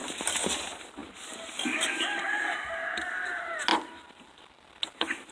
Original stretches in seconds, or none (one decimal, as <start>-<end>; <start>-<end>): 0.0-5.3